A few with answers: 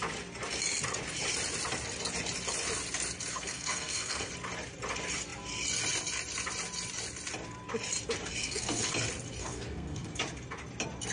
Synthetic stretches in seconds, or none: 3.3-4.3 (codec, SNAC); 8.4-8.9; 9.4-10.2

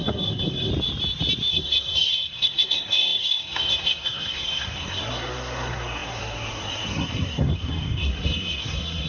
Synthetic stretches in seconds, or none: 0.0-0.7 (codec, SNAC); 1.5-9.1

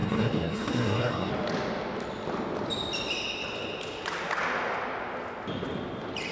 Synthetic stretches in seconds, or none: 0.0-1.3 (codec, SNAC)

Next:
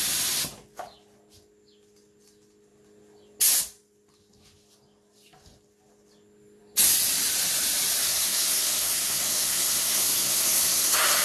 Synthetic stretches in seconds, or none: 8.0-11.2 (codec, SNAC)

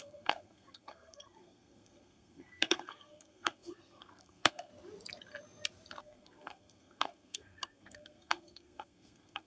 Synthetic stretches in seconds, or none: 0.0-4.7 (codec, SNAC); 6.0-9.5

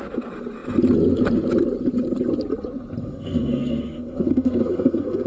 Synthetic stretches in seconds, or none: 3.0-5.3 (codec, SNAC)